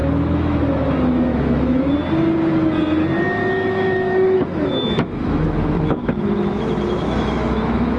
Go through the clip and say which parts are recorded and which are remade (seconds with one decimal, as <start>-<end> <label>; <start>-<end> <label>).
0.0-0.6 remade; 0.6-1.3 recorded; 1.3-1.9 remade; 1.9-3.4 recorded; 3.4-8.0 remade